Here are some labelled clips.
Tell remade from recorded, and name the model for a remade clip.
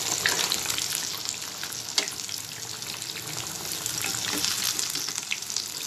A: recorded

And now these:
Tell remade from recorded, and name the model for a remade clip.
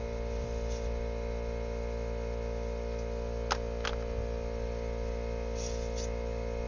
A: recorded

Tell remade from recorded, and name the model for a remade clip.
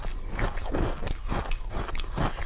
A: recorded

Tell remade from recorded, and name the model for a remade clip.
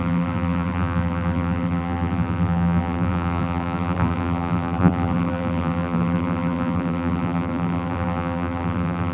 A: remade, vocoder, BigVGAN v2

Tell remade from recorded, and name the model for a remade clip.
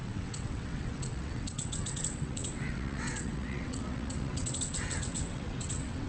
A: remade, vocoder, WaveNeXt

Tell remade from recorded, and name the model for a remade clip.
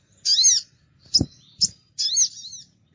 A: recorded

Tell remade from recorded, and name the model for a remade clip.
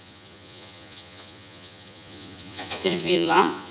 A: remade, vocoder, Vocos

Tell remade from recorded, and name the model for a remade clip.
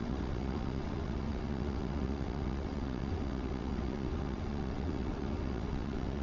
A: remade, vocoder, WaveNeXt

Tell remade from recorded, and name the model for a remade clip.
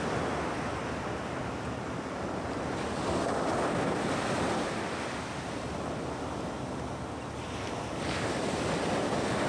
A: recorded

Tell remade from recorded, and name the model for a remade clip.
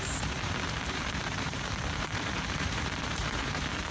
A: remade, vocoder, BigVGAN v2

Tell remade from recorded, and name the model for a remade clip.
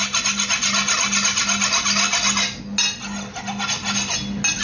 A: recorded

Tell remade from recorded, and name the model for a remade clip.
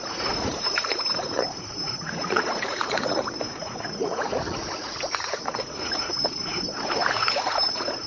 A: remade, vocoder, Vocos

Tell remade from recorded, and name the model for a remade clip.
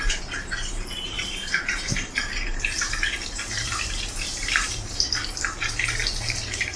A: remade, vocoder, BigVGAN v2